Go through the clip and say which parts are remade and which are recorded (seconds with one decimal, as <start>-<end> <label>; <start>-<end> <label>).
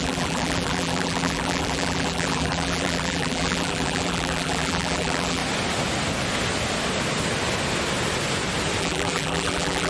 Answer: 0.0-5.4 remade; 5.4-8.8 recorded; 8.8-9.9 remade